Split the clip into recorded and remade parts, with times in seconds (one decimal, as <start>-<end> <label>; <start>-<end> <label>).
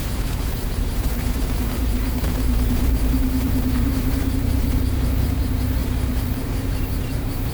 0.0-7.5 remade